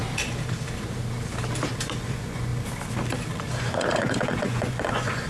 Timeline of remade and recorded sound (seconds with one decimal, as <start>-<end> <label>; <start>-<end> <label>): 0.0-1.7 recorded; 1.7-2.5 remade; 2.5-3.6 recorded; 3.6-5.3 remade